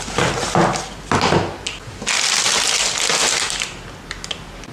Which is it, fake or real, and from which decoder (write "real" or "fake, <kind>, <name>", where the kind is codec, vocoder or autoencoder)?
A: real